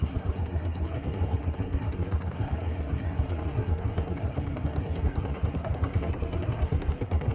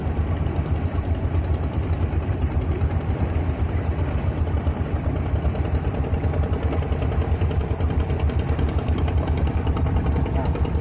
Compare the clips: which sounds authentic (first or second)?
second